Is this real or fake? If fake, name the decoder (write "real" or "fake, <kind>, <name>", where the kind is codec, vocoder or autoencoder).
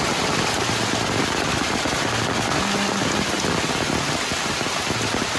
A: real